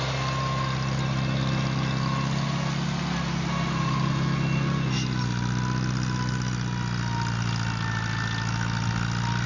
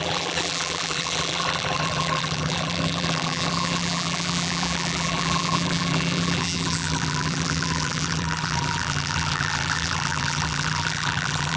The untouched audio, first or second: first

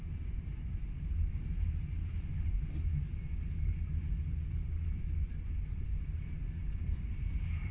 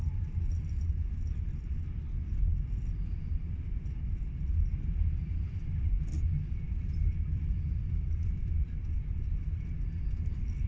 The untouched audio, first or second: first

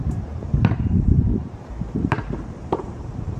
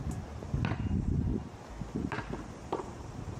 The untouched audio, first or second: second